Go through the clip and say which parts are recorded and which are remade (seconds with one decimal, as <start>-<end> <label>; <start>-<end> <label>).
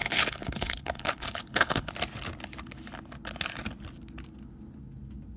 0.0-1.9 remade; 1.9-5.4 recorded